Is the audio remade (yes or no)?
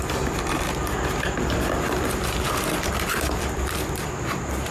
yes